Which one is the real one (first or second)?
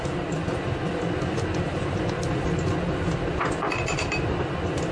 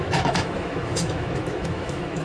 first